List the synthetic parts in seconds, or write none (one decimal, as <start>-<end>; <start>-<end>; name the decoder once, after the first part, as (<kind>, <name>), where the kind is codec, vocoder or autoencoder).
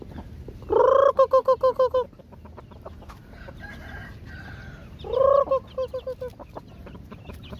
none